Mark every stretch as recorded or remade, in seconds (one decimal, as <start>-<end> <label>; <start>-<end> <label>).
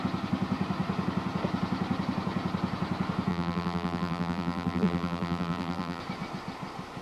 0.0-3.3 recorded; 3.3-6.0 remade; 6.0-7.0 recorded